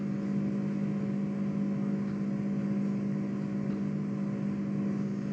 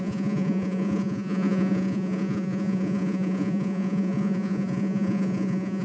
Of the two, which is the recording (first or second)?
first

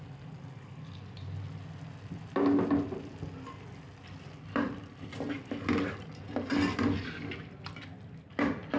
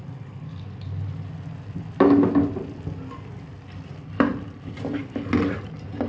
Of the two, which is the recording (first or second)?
first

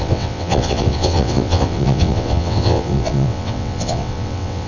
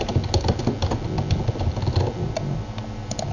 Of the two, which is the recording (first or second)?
second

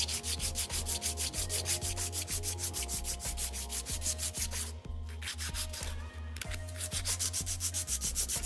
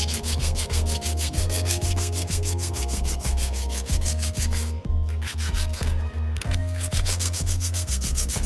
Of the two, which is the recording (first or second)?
first